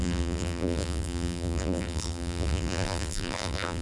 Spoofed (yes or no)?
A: yes